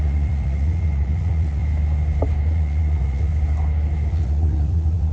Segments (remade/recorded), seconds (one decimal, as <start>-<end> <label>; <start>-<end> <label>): 0.0-1.6 remade; 1.6-2.5 recorded; 2.5-3.3 remade; 3.3-4.1 recorded; 4.1-5.1 remade